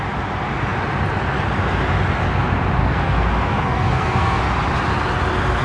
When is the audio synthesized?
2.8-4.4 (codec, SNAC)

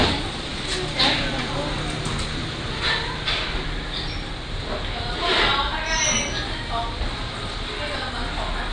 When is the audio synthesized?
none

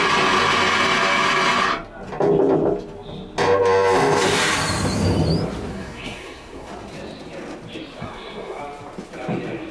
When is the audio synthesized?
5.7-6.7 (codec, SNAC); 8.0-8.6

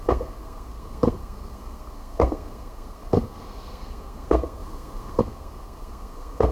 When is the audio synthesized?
0.0-6.5 (codec, SNAC)

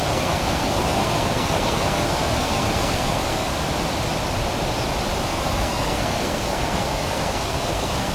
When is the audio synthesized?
0.0-3.5 (codec, SNAC); 5.3-8.1

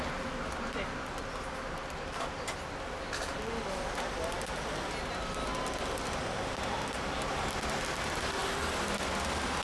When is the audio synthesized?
none